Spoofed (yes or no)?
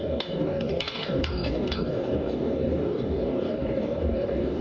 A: yes